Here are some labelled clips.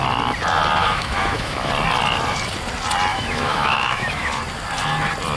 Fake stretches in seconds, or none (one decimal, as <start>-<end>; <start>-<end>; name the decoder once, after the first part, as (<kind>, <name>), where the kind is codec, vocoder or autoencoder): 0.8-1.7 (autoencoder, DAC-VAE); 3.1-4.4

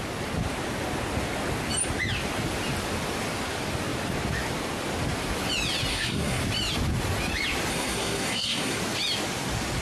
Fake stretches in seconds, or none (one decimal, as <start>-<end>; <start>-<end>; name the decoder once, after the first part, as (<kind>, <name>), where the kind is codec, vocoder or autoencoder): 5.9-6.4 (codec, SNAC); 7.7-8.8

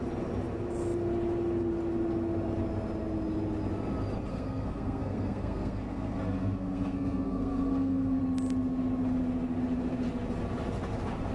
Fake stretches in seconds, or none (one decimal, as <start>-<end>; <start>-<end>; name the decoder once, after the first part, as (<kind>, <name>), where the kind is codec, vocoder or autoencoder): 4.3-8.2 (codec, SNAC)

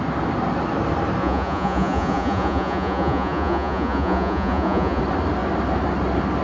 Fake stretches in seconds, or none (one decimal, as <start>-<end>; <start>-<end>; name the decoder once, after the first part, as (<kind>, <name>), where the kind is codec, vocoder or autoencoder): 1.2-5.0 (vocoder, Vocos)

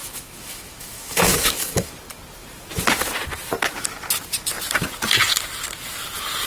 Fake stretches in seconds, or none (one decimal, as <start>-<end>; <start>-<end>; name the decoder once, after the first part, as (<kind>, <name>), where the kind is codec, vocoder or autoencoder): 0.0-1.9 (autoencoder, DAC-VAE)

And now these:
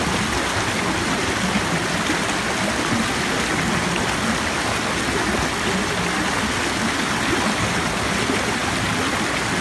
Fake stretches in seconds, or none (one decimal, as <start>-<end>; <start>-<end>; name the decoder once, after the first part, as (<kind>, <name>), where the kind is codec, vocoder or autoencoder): none

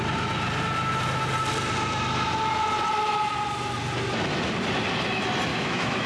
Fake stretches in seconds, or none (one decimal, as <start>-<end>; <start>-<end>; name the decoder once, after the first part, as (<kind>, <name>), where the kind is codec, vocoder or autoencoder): 5.5-6.1 (autoencoder, DAC-VAE)

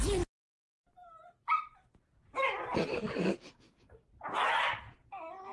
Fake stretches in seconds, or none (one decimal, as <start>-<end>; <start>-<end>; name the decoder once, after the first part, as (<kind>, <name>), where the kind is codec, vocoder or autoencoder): 2.9-4.1 (codec, DAC)